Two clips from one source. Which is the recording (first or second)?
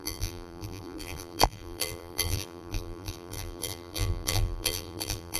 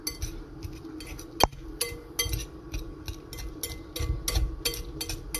second